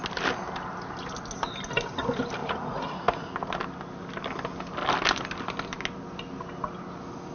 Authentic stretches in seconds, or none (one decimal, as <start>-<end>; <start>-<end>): 0.0-2.4; 3.3-7.3